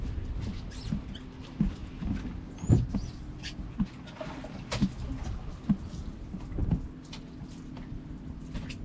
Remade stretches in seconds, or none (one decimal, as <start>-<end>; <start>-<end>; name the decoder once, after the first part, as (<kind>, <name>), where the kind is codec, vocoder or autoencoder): none